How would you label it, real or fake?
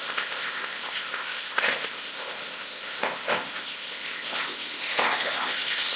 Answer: fake